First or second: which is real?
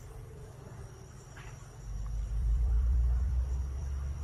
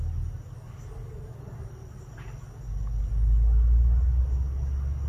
second